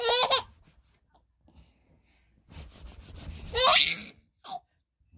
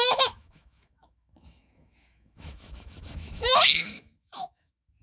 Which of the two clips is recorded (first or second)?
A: first